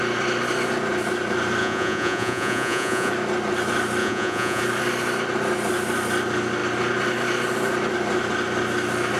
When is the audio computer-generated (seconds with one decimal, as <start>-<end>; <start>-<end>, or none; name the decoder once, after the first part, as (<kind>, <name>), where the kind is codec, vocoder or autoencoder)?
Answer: 1.6-3.1 (vocoder, Vocos); 4.0-4.6